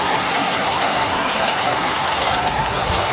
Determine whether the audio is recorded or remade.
remade